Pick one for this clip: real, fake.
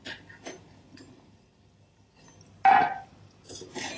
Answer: real